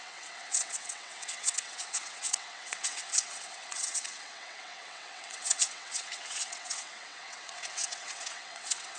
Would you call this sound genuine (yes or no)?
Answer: no